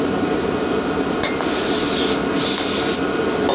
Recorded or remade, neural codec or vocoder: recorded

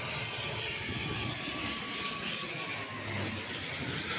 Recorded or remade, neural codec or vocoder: recorded